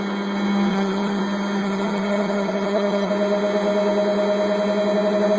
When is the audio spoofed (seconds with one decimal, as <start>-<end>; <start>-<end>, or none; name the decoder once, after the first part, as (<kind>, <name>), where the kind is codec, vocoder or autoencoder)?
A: 0.7-1.2 (vocoder, HiFi-GAN); 1.6-3.1